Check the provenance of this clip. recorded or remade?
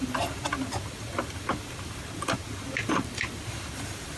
remade